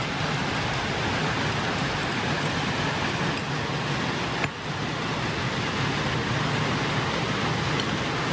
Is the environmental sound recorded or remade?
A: recorded